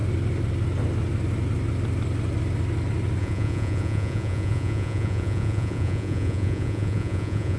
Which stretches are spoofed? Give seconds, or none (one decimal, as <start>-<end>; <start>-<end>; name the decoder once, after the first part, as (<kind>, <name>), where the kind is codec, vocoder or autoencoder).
3.2-7.6 (vocoder, Vocos)